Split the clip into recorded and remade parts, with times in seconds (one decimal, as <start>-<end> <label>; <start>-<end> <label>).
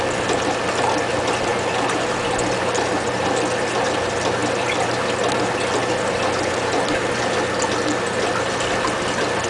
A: 0.0-9.5 recorded